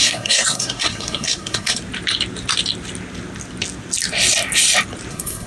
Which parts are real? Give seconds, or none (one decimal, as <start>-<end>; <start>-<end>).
1.8-5.1